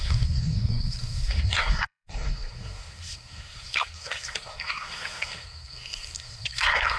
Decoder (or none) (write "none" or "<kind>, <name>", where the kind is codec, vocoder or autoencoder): codec, SNAC